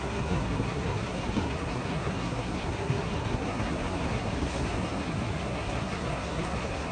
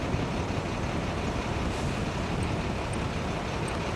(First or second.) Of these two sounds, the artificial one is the first